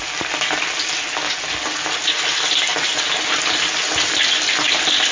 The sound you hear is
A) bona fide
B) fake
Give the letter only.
A